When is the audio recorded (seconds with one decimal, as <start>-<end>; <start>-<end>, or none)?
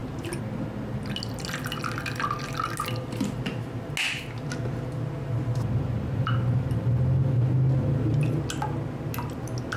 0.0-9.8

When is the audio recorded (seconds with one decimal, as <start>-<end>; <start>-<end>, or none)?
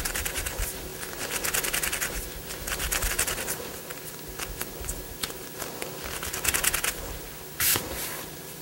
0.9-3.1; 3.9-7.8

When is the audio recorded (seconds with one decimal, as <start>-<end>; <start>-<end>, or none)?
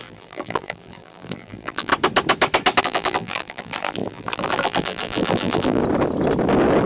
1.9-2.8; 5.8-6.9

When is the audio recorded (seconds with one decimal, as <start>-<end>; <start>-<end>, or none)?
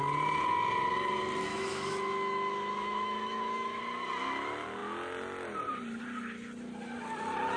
0.0-1.5; 3.8-7.6